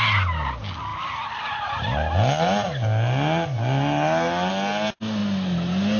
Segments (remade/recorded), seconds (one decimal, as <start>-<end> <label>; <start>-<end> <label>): 0.0-6.0 recorded

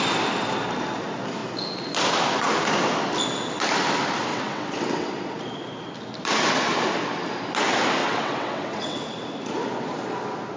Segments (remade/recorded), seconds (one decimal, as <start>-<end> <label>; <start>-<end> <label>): 0.0-4.3 recorded; 4.3-5.1 remade; 5.1-8.0 recorded; 8.0-9.0 remade; 9.0-10.6 recorded

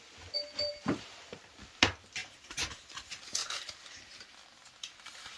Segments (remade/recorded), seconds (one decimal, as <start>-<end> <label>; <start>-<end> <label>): 0.0-0.7 recorded; 0.7-1.4 remade; 1.4-2.2 recorded; 2.2-2.9 remade; 2.9-5.4 recorded

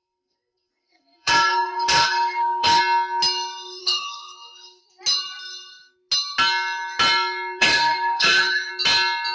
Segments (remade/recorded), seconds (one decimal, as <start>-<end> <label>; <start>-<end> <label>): 0.0-2.8 remade; 2.8-3.8 recorded; 3.8-4.8 remade; 4.8-7.6 recorded; 7.6-8.7 remade; 8.7-9.3 recorded

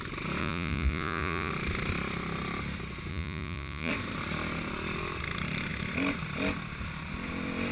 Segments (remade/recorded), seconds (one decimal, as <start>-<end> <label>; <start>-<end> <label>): 0.0-0.4 recorded; 0.4-1.5 remade; 1.5-3.1 recorded; 3.1-3.9 remade; 3.9-7.7 recorded

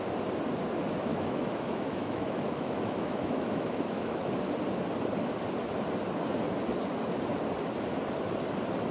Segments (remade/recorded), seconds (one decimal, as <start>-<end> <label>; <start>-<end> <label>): 0.0-1.1 recorded; 1.1-4.3 remade; 4.3-8.9 recorded